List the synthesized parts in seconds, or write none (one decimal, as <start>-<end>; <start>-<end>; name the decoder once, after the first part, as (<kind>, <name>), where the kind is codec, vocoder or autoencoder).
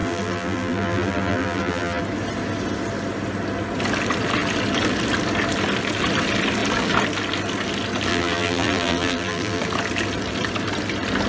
0.0-2.0 (vocoder, BigVGAN v2); 8.1-9.6